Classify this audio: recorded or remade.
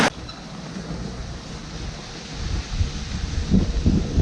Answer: recorded